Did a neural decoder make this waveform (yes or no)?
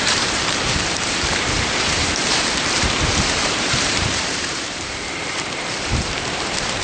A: yes